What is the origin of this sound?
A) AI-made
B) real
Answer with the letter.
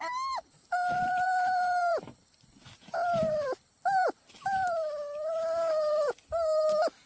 A